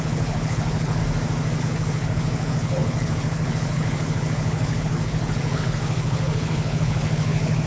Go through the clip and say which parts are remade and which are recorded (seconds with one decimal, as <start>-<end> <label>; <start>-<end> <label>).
0.0-1.0 remade; 1.0-1.6 recorded; 1.6-7.7 remade